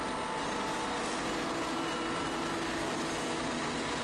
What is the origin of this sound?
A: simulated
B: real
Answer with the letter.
B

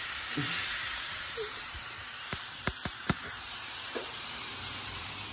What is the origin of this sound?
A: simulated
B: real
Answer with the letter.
A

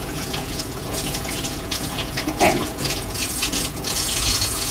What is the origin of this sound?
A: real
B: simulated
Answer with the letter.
B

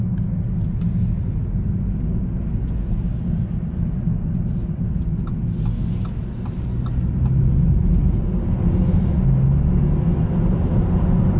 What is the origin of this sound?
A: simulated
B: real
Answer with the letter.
B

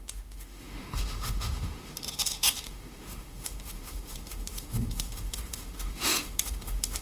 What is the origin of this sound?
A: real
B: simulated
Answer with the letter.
B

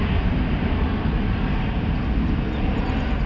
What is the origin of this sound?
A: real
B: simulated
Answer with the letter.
A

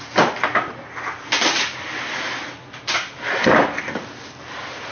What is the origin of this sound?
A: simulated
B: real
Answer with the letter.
B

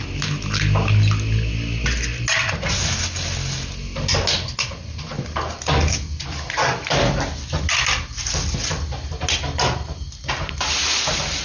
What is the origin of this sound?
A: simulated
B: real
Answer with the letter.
B